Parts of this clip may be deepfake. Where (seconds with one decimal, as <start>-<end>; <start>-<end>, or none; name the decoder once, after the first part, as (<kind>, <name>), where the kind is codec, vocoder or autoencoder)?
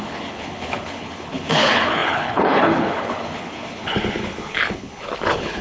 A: 0.0-5.6 (codec, HILCodec)